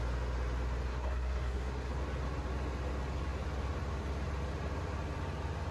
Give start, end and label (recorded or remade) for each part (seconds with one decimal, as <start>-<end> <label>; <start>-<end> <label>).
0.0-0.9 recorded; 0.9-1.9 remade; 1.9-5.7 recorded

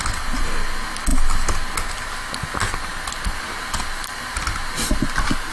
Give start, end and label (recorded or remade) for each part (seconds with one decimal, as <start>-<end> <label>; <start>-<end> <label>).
0.0-5.5 recorded

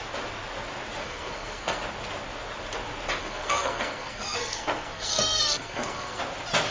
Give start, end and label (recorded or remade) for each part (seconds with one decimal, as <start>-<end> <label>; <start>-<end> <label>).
0.0-1.0 recorded; 1.0-1.8 remade; 1.8-3.2 recorded; 3.2-6.2 remade; 6.2-6.7 recorded

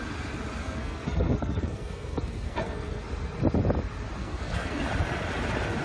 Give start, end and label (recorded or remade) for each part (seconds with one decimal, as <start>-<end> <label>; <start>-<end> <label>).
0.0-0.6 recorded; 0.6-3.0 remade; 3.0-4.2 recorded; 4.2-4.8 remade; 4.8-5.8 recorded